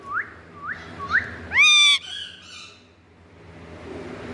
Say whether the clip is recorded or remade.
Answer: recorded